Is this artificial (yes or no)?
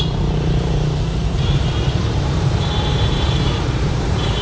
yes